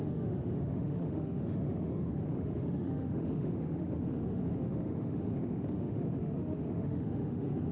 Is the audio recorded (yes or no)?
no